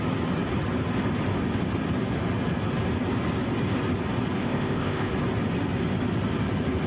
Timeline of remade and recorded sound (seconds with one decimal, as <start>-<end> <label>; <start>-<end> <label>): 0.0-4.4 recorded; 4.4-5.1 remade; 5.1-6.9 recorded